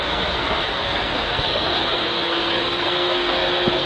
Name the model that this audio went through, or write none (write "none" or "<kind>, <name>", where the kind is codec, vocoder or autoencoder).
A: codec, SNAC